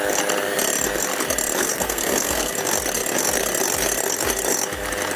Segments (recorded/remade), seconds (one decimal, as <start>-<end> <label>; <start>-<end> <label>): 0.0-1.6 recorded; 1.6-2.5 remade; 2.5-5.2 recorded